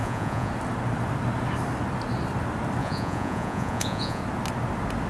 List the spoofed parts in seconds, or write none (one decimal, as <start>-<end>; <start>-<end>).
0.0-0.5; 2.8-4.2